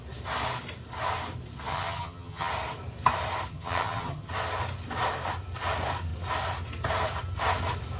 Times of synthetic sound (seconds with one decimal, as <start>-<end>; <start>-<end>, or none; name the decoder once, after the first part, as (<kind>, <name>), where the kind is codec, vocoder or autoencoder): 1.7-2.5 (vocoder, HiFi-GAN); 3.5-4.3